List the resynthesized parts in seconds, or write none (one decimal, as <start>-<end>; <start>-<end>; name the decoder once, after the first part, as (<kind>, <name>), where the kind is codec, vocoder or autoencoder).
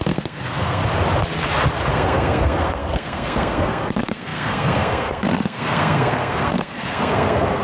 0.0-0.8 (codec, SNAC); 1.9-7.6